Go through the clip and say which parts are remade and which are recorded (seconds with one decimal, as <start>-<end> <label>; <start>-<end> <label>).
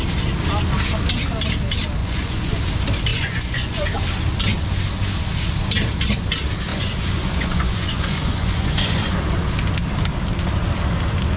0.0-2.0 recorded; 2.0-2.6 remade; 2.6-3.1 recorded; 3.1-3.9 remade; 3.9-6.7 recorded; 6.7-9.2 remade; 9.2-11.4 recorded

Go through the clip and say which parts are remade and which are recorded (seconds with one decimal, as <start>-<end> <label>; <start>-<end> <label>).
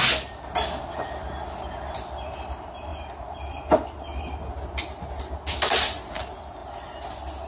0.0-7.5 recorded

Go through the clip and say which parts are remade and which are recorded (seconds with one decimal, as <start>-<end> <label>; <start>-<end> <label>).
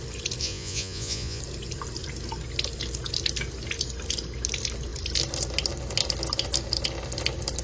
0.0-0.4 recorded; 0.4-1.4 remade; 1.4-7.6 recorded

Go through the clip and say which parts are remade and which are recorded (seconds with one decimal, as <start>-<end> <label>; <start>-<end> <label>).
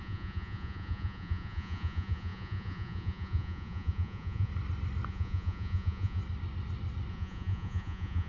0.0-4.5 remade; 4.5-5.1 recorded; 5.1-6.2 remade; 6.2-7.1 recorded; 7.1-8.3 remade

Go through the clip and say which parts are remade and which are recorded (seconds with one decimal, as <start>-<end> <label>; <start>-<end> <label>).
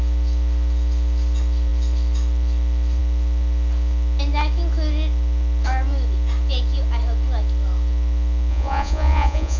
0.0-8.5 recorded; 8.5-9.6 remade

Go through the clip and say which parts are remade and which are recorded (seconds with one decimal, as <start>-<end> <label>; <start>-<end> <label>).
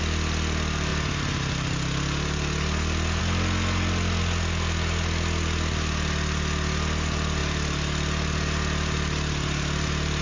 0.0-10.2 recorded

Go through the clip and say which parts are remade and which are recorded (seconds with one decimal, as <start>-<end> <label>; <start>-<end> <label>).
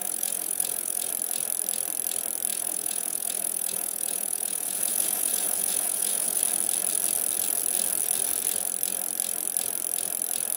0.0-1.1 remade; 1.1-2.5 recorded; 2.5-6.4 remade; 6.4-10.6 recorded